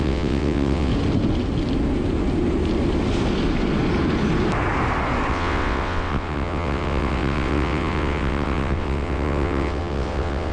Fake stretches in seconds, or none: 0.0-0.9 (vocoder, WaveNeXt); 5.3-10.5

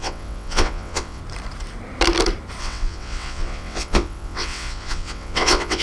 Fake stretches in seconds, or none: 0.0-1.2 (vocoder, WaveNeXt); 2.6-5.8

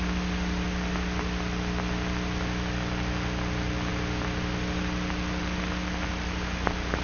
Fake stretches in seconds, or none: none